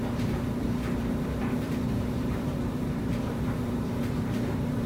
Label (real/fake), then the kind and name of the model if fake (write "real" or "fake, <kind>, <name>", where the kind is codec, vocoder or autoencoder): fake, vocoder, BigVGAN v2